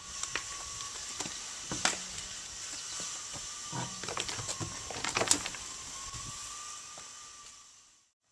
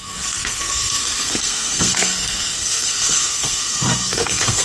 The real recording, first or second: first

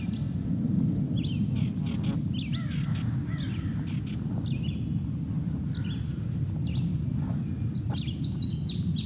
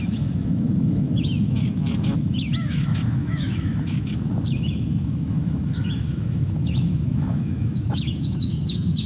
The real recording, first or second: first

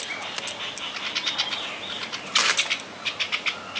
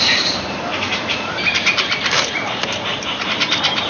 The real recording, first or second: first